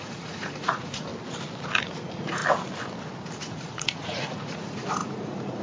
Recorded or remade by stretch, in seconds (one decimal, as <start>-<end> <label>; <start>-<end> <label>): 0.0-1.1 remade; 1.1-1.8 recorded; 1.8-2.4 remade; 2.4-3.4 recorded; 3.4-5.6 remade